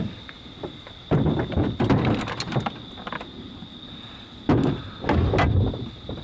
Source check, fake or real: real